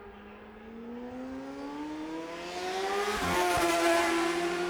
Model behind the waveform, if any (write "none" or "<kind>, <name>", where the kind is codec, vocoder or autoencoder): none